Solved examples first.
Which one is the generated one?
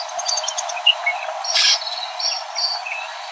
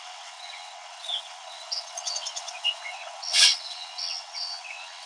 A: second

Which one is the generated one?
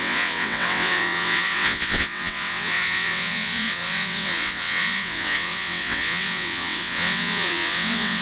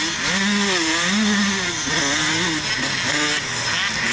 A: first